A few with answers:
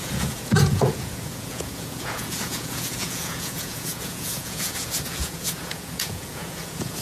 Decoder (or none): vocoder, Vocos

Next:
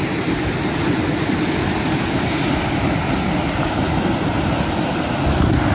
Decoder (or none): none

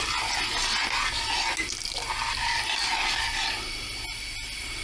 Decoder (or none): none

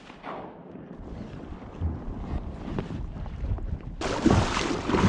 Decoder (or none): none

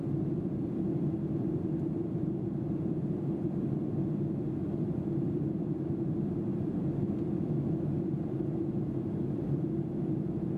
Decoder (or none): none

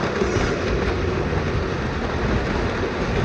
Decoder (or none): none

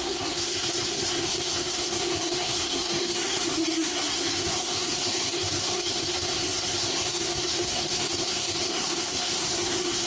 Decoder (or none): codec, SNAC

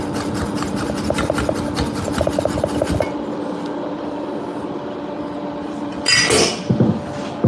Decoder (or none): none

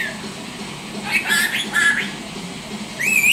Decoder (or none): none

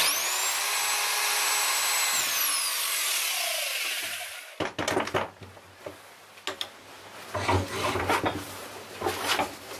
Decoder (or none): none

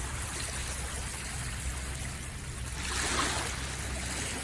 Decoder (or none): none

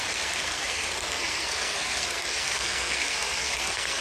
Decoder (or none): codec, SNAC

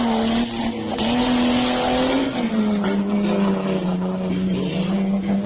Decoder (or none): none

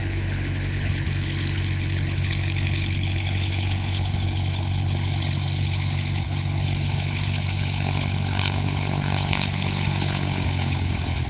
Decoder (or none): codec, HILCodec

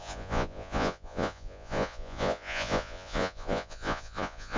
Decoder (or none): vocoder, Vocos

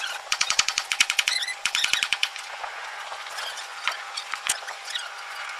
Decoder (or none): vocoder, Vocos